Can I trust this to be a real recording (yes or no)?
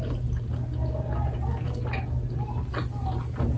yes